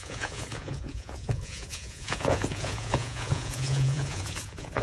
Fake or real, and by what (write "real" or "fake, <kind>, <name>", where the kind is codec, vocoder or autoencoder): fake, vocoder, Vocos